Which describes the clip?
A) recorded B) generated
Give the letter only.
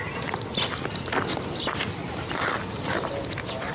A